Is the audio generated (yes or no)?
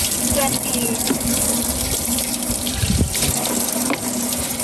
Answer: yes